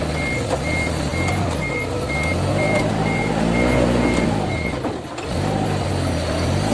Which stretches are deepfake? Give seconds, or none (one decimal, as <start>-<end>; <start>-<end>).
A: none